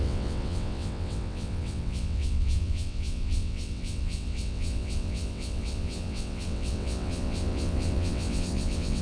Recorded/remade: remade